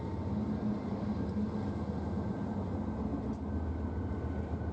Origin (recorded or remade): recorded